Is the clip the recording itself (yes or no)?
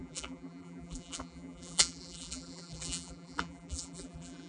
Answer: no